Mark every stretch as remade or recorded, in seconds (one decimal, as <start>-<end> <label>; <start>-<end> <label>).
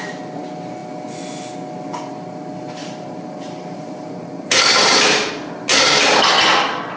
0.0-2.8 recorded; 2.8-5.3 remade; 5.3-7.0 recorded